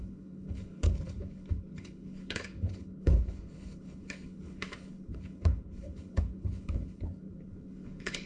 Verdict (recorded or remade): remade